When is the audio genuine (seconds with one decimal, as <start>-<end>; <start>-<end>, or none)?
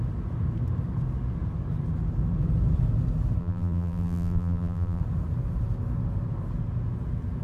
0.0-3.4; 5.0-7.4